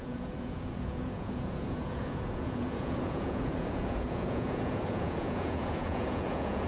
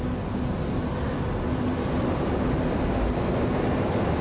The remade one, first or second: first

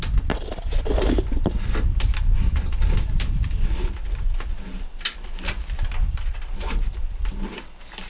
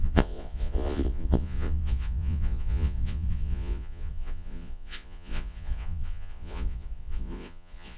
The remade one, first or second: second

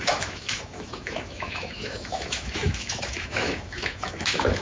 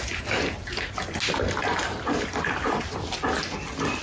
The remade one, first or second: first